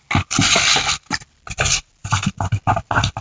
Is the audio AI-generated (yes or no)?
no